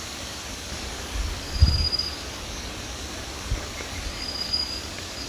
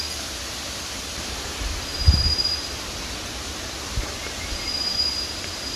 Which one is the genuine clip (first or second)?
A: second